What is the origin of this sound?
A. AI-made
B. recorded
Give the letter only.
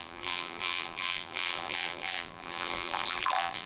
A